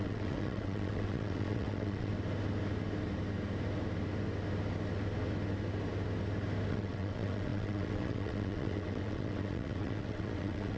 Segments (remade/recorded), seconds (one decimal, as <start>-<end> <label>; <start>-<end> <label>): 0.0-2.1 remade; 2.1-6.7 recorded; 6.7-10.8 remade

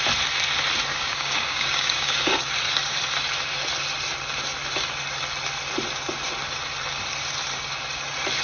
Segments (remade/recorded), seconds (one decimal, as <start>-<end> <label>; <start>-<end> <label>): 0.0-0.9 recorded; 0.9-2.3 remade; 2.3-8.4 recorded

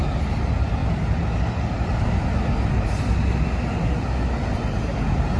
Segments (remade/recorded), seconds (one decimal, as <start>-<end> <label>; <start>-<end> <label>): 0.0-5.4 recorded

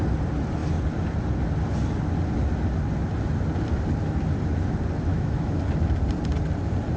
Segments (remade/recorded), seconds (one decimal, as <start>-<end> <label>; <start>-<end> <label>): 0.0-5.1 recorded; 5.1-5.6 remade; 5.6-7.0 recorded

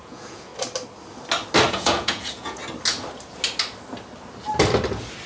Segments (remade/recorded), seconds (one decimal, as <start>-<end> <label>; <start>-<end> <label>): 0.0-0.5 remade; 0.5-1.7 recorded; 1.7-2.6 remade; 2.6-5.3 recorded

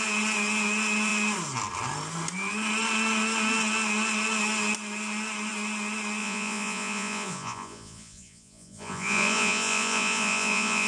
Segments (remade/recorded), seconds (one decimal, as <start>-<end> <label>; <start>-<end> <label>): 0.0-6.2 recorded; 6.2-10.9 remade